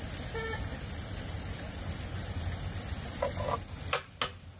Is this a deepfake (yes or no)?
no